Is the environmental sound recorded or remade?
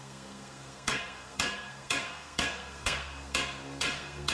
remade